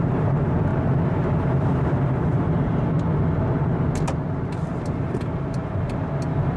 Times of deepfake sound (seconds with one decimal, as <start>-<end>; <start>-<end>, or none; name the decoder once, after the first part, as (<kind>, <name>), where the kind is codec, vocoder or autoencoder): 0.7-2.9 (vocoder, BigVGAN v2); 4.7-6.0

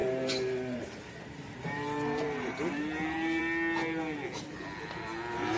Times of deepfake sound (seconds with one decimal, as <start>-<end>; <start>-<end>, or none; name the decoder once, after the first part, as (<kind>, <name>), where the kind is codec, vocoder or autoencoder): 0.0-3.4 (vocoder, BigVGAN v2)